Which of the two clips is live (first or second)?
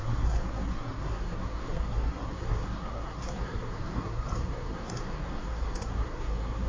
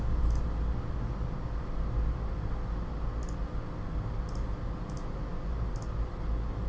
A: second